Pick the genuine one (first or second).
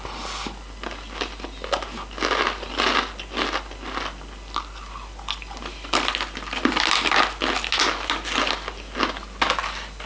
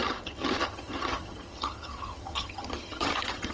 first